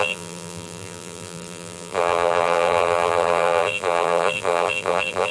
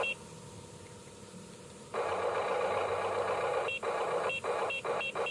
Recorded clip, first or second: second